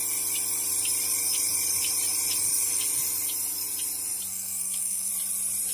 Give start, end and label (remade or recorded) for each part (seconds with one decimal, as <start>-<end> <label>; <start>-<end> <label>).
0.0-4.3 recorded; 4.3-5.1 remade; 5.1-5.7 recorded